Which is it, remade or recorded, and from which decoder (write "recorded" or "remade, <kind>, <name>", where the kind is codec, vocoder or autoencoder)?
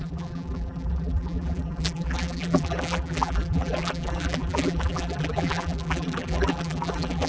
remade, vocoder, BigVGAN v2